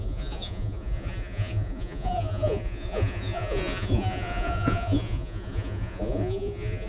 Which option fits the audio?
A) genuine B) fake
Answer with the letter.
B